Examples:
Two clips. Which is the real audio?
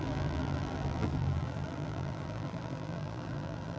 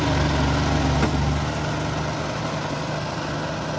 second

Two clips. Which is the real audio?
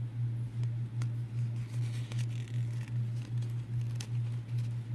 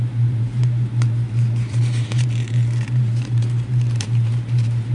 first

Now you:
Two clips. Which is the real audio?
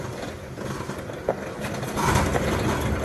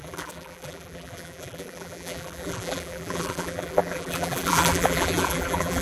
first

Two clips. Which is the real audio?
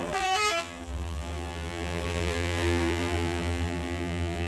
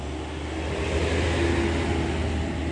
second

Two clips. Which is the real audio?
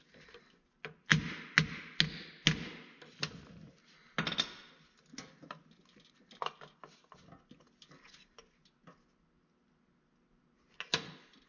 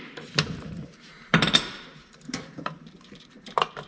first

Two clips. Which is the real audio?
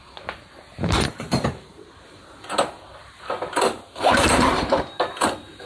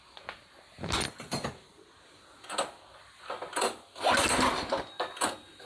second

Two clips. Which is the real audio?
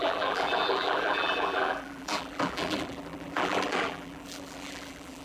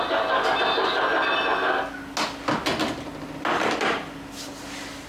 second